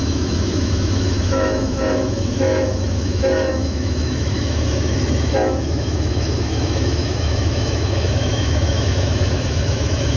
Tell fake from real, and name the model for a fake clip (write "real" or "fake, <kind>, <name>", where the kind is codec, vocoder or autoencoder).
fake, autoencoder, DAC-VAE